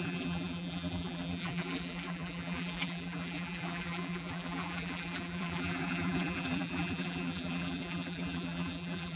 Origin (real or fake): fake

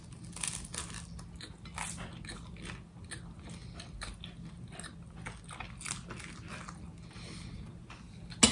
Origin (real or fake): real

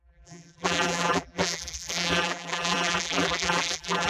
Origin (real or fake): fake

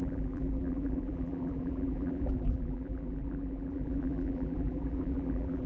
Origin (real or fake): fake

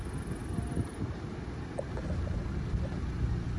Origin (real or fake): real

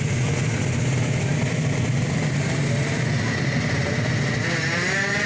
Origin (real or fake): real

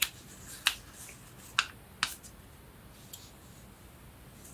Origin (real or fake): real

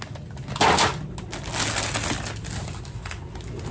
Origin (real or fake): real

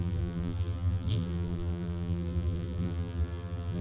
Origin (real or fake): fake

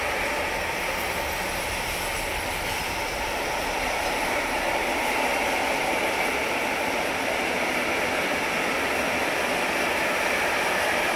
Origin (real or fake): real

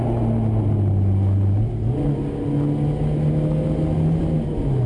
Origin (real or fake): real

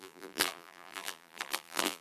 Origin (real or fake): fake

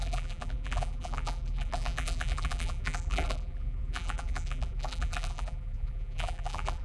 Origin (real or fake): fake